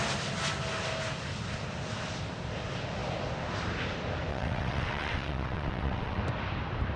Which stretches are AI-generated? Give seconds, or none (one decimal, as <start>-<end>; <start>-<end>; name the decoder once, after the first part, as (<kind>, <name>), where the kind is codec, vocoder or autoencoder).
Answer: 4.3-6.2 (vocoder, WaveNeXt)